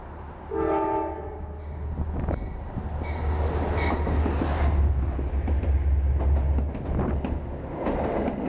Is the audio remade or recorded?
recorded